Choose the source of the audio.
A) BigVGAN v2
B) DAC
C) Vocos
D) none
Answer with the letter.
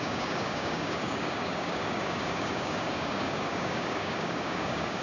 B